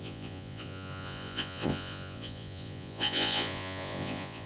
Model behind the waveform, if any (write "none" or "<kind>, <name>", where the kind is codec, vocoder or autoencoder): vocoder, Vocos